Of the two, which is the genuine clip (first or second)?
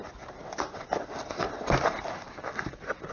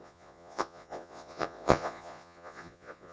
first